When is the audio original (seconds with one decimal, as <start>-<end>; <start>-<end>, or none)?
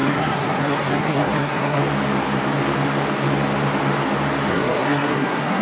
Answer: 1.8-4.5